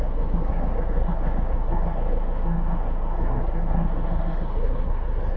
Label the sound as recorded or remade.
remade